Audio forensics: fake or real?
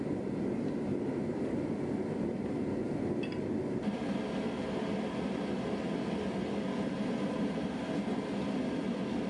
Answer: real